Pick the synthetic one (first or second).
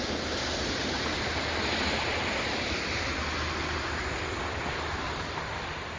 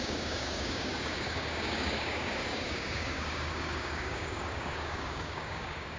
second